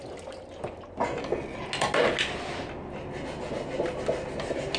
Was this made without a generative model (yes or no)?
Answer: yes